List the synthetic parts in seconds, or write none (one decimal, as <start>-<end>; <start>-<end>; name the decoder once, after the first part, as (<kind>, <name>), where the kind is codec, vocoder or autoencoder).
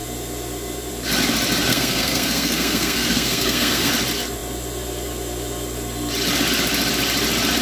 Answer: 1.7-3.9 (codec, SNAC)